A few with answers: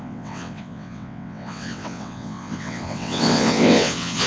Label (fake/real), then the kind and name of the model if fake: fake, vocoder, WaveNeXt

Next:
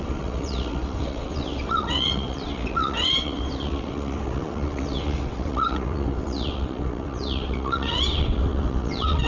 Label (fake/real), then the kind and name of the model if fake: fake, vocoder, WaveNeXt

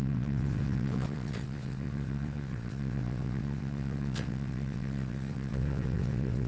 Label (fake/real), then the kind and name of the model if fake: fake, vocoder, WaveNeXt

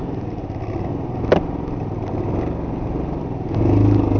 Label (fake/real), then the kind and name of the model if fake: real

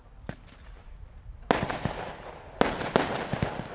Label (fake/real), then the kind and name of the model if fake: real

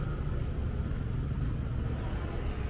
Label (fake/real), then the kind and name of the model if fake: real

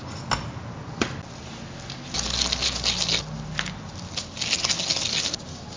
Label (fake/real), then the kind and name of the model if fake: real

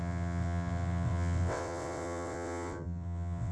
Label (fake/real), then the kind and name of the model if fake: fake, vocoder, WaveNeXt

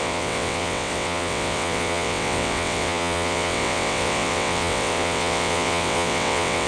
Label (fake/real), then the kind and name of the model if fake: fake, vocoder, WaveNeXt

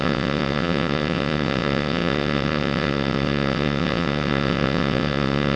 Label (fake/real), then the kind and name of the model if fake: fake, vocoder, WaveNeXt